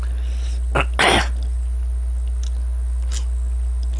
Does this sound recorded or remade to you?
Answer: recorded